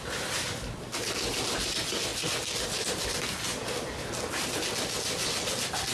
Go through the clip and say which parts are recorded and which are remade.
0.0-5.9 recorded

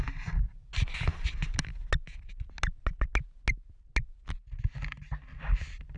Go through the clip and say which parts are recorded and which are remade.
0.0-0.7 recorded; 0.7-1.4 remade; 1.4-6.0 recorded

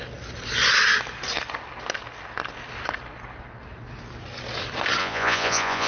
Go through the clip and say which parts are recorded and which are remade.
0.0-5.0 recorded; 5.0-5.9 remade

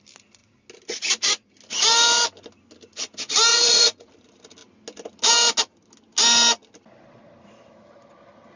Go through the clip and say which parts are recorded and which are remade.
0.0-3.5 recorded; 3.5-4.1 remade; 4.1-8.6 recorded

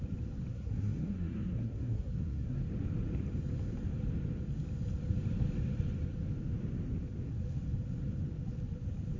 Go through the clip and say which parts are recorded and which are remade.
0.0-0.5 recorded; 0.5-2.7 remade; 2.7-9.2 recorded

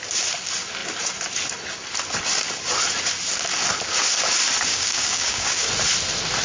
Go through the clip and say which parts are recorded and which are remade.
0.0-4.7 recorded; 4.7-5.7 remade; 5.7-6.4 recorded

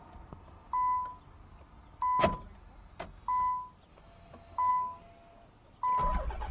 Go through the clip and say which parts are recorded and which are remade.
0.0-3.9 recorded; 3.9-4.7 remade; 4.7-6.5 recorded